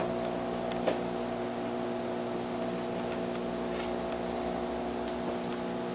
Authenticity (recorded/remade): recorded